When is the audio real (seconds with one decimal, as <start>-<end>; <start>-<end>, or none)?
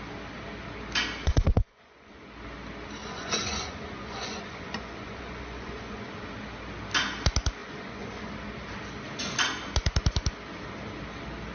0.0-1.2; 2.1-3.0; 6.1-7.6; 8.3-11.5